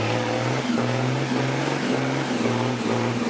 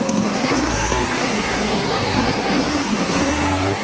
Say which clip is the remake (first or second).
second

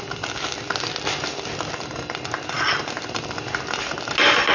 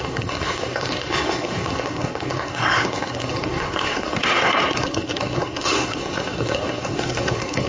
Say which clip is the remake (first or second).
second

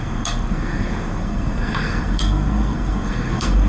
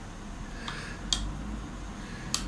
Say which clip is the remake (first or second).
first